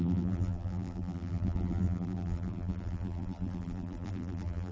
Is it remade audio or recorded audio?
remade